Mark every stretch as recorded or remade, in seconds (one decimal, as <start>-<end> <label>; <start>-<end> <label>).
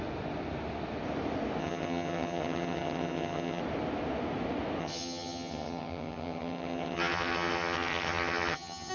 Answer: 0.0-1.6 recorded; 1.6-3.6 remade; 3.6-4.8 recorded; 4.8-8.9 remade